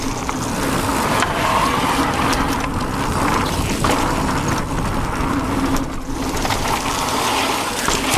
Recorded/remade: recorded